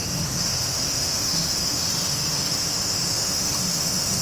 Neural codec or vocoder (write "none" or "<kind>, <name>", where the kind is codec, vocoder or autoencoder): autoencoder, DAC-VAE